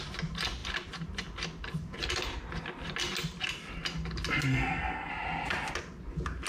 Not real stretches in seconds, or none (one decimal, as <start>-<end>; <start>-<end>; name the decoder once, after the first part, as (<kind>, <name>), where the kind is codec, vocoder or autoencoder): 4.5-5.1 (codec, SNAC)